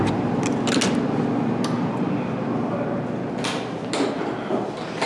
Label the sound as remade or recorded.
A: recorded